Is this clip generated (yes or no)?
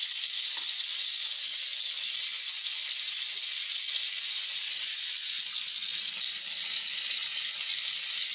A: no